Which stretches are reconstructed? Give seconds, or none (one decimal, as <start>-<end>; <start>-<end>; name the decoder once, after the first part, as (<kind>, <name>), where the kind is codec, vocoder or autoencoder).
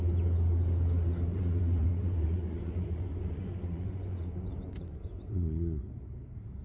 1.3-5.3 (vocoder, Vocos)